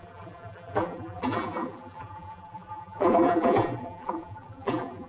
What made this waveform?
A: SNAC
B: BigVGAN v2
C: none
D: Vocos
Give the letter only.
B